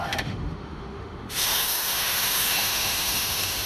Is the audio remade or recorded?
remade